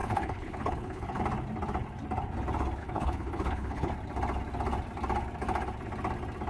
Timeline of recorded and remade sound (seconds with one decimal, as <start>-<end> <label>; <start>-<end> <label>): 0.0-1.2 remade; 1.2-2.8 recorded; 2.8-3.9 remade; 3.9-6.5 recorded